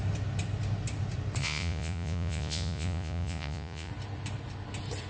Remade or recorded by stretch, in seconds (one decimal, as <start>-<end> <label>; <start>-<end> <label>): 0.0-1.4 recorded; 1.4-3.9 remade; 3.9-5.1 recorded